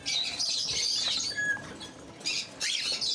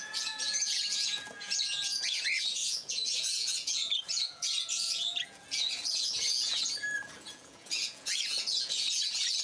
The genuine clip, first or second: first